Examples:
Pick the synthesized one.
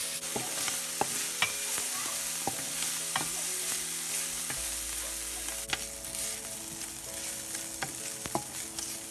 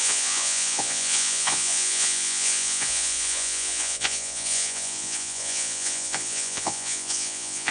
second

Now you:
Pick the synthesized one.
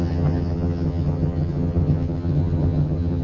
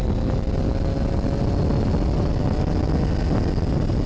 first